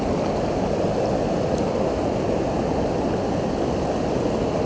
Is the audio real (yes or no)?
yes